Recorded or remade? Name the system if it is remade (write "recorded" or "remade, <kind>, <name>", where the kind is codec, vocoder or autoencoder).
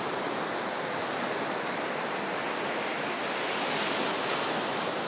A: recorded